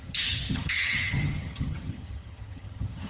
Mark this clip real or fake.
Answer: fake